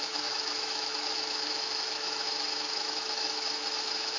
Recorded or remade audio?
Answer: remade